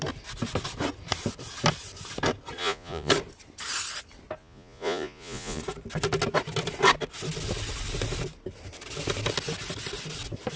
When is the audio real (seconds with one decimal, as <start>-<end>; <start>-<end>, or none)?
0.0-2.6; 3.1-4.4; 5.6-10.6